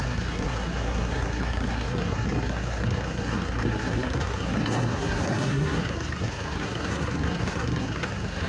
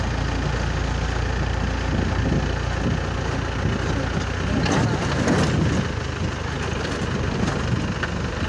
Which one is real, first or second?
second